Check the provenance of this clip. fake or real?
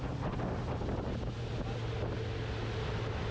real